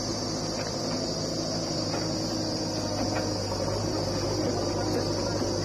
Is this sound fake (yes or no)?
no